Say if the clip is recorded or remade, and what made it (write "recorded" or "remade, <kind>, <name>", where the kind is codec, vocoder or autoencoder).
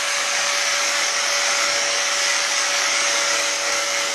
remade, codec, DAC